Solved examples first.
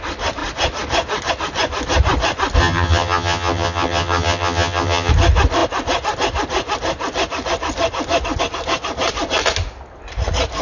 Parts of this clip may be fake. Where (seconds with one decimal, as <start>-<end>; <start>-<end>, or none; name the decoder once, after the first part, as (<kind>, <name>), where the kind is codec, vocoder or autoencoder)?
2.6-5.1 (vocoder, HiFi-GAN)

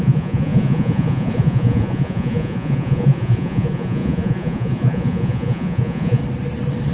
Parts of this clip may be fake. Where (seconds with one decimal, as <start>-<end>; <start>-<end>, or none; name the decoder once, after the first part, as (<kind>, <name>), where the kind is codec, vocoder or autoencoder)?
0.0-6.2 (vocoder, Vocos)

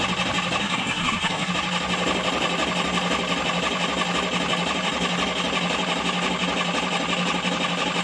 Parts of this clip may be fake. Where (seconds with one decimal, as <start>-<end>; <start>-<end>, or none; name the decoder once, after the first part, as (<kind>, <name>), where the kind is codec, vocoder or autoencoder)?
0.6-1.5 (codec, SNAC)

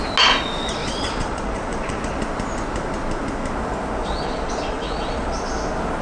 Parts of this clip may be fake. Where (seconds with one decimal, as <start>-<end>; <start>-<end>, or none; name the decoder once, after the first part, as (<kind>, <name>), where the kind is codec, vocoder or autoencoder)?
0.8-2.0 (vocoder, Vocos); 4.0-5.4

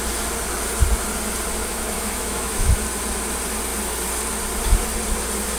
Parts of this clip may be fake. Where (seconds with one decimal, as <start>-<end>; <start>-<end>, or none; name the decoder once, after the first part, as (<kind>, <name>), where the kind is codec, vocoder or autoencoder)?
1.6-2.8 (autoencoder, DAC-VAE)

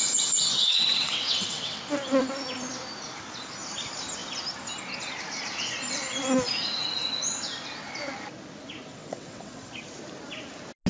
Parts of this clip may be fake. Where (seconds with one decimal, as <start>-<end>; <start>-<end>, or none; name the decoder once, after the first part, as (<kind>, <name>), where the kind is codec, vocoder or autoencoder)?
0.6-1.8 (vocoder, WaveNeXt); 8.9-9.7

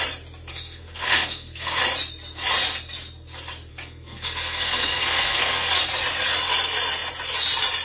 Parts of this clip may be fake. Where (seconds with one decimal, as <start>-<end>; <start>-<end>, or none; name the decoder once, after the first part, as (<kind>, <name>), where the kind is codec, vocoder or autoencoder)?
0.5-1.8 (codec, SNAC); 3.7-5.8